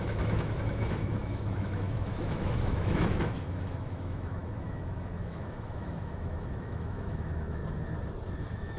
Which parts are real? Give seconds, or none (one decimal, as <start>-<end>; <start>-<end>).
7.6-8.4